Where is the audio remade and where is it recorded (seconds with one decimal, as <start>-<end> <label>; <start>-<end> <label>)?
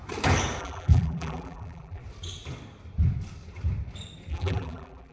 0.0-0.6 recorded; 0.6-2.0 remade; 2.0-4.3 recorded; 4.3-5.1 remade